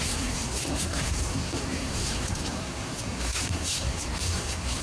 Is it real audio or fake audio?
fake